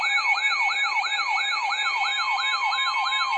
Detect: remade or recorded recorded